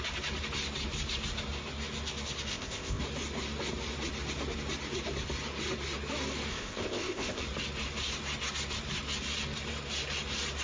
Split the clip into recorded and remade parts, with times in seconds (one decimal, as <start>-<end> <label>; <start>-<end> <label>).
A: 0.0-2.5 recorded; 2.5-3.0 remade; 3.0-6.5 recorded; 6.5-7.4 remade; 7.4-10.6 recorded